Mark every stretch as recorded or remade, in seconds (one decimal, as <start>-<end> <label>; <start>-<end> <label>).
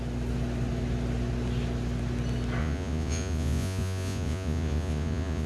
0.0-2.6 recorded; 2.6-5.5 remade